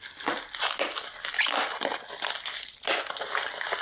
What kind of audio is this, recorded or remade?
recorded